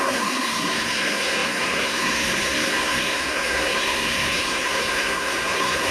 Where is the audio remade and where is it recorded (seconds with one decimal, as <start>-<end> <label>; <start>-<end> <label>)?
0.0-5.9 remade